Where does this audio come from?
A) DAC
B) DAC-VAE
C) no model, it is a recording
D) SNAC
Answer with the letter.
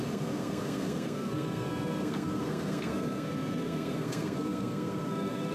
D